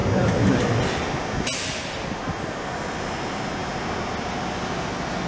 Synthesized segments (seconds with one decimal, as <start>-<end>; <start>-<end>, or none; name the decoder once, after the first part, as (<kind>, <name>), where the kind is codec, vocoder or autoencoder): none